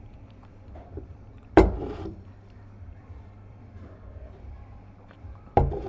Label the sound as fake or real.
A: fake